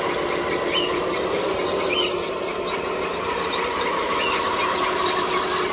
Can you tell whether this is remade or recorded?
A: recorded